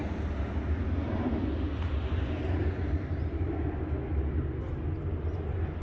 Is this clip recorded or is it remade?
recorded